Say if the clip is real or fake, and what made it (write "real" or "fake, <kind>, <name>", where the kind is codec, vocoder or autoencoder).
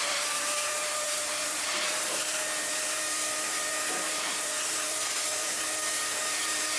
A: fake, vocoder, BigVGAN v2